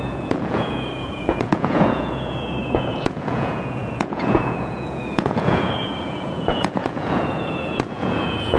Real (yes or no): no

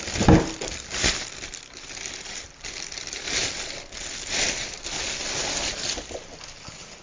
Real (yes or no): yes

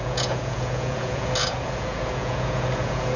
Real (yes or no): no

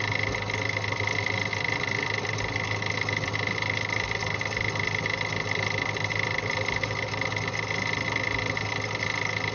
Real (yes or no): yes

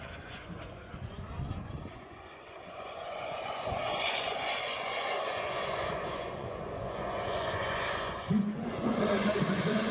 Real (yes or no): no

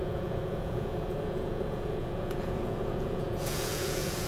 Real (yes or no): no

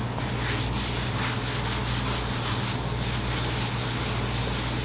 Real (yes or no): yes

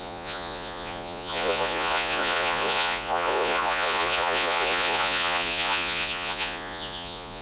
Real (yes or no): no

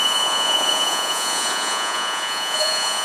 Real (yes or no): no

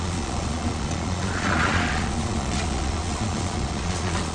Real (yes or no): no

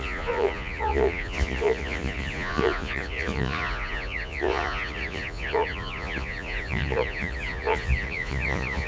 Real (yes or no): no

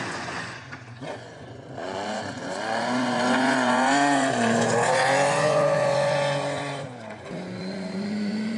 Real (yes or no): no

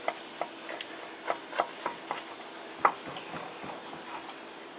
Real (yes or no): yes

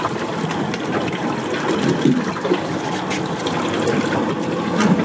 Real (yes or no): yes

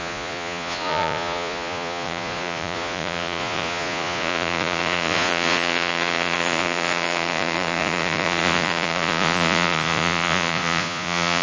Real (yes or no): no